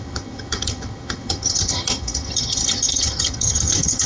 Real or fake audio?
fake